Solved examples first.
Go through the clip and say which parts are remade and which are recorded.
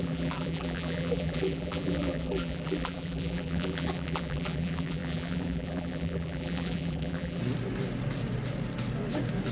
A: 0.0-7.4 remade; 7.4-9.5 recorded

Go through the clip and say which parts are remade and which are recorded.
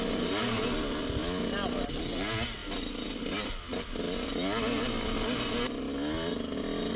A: 0.0-7.0 recorded